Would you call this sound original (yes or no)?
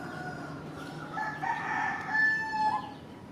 yes